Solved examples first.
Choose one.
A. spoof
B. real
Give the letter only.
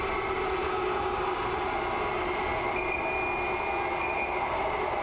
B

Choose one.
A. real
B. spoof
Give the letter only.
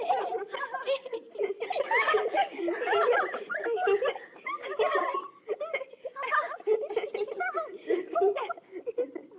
A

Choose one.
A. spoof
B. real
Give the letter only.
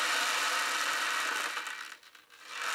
B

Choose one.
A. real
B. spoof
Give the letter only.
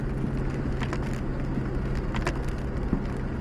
A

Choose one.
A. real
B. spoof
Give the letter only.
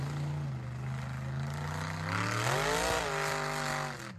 A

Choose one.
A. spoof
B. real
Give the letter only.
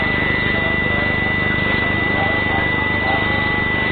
B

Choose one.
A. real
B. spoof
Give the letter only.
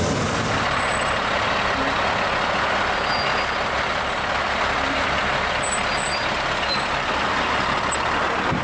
A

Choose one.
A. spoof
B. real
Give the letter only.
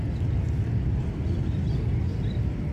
B